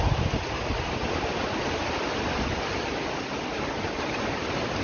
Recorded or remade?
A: recorded